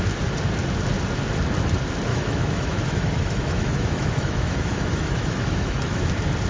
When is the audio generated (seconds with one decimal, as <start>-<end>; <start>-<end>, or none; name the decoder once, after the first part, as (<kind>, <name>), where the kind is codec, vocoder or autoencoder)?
2.1-6.0 (autoencoder, DAC-VAE)